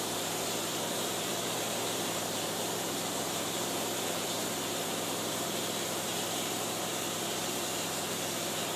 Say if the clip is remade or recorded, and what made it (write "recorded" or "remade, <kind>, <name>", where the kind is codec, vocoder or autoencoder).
remade, vocoder, BigVGAN v2